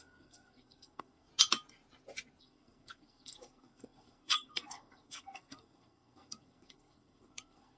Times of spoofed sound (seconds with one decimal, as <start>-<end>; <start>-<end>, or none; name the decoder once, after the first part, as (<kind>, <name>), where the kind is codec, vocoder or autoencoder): 0.0-1.3 (codec, SNAC); 2.4-7.8